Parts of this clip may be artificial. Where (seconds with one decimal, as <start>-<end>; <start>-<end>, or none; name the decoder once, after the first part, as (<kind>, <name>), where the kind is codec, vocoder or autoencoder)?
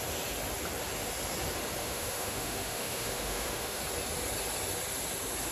1.8-3.8 (autoencoder, DAC-VAE)